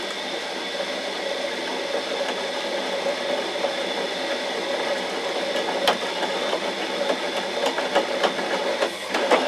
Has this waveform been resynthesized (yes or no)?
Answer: no